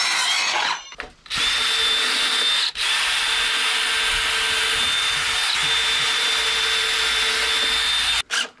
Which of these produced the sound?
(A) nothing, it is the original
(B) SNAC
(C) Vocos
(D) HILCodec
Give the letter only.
A